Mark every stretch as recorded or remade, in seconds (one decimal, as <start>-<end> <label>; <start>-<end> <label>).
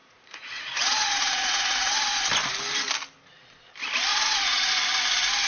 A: 0.0-2.2 remade; 2.2-4.1 recorded; 4.1-4.7 remade; 4.7-5.5 recorded